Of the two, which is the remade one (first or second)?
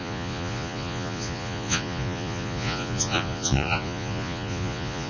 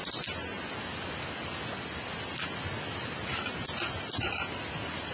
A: first